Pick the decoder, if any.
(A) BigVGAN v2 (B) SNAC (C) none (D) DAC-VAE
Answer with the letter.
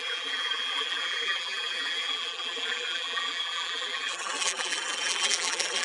A